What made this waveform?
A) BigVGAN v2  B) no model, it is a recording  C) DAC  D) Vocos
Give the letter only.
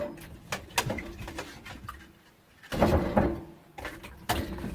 B